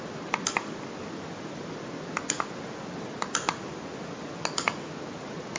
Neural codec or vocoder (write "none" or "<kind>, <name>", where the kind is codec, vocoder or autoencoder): none